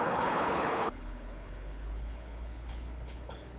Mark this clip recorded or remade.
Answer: remade